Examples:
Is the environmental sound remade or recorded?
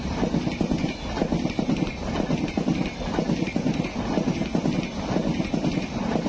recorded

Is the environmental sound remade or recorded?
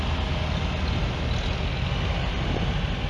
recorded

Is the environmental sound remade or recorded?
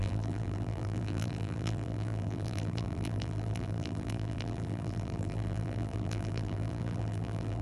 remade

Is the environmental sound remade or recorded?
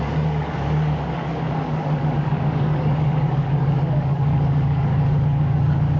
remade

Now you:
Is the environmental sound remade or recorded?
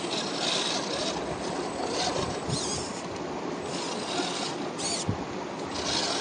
recorded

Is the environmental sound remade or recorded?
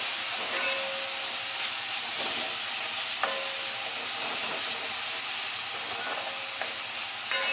recorded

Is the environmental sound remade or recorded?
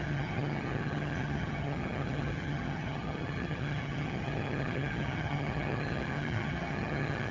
remade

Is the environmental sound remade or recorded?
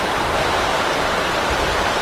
remade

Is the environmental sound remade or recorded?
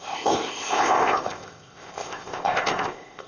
remade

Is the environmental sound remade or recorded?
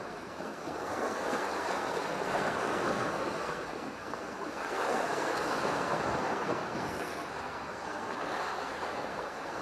remade